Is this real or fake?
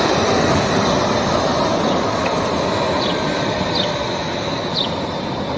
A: real